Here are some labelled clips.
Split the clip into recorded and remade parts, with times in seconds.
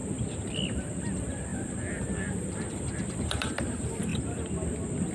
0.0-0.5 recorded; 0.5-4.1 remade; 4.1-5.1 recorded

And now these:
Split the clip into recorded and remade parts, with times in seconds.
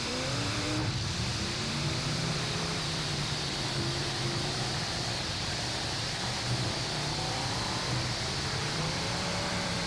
0.0-9.9 remade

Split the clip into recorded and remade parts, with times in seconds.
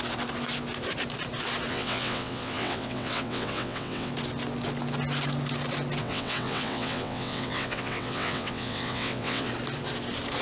0.0-1.7 recorded; 1.7-4.1 remade; 4.1-6.0 recorded; 6.0-9.5 remade; 9.5-10.4 recorded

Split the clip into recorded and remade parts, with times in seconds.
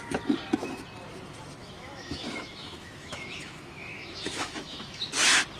0.0-1.6 recorded; 1.6-5.0 remade; 5.0-5.6 recorded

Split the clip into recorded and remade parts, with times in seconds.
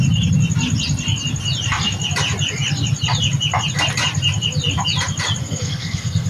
0.0-5.4 recorded; 5.4-6.3 remade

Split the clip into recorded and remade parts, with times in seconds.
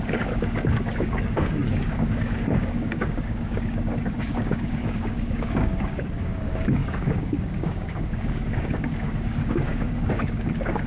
0.0-10.9 remade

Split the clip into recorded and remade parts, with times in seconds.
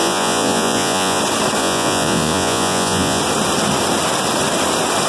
0.0-1.2 remade; 1.2-1.6 recorded; 1.6-3.2 remade; 3.2-5.1 recorded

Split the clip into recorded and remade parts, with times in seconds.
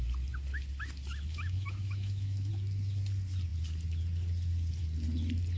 0.0-1.3 recorded; 1.3-2.5 remade; 2.5-5.6 recorded